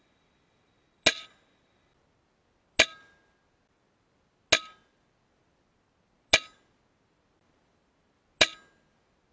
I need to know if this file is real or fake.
real